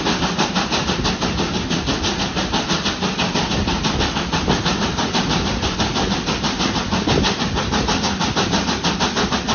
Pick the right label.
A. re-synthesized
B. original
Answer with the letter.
B